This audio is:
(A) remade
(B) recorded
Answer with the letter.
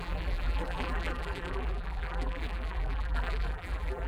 A